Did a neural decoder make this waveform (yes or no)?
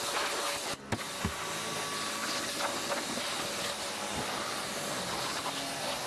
no